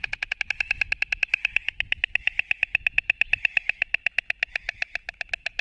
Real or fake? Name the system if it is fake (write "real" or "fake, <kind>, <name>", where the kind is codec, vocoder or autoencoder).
real